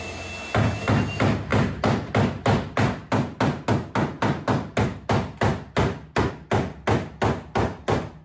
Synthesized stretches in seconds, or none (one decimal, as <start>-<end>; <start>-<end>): none